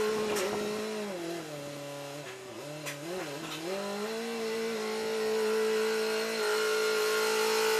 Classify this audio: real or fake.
real